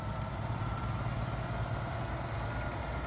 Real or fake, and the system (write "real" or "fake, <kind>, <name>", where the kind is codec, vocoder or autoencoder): real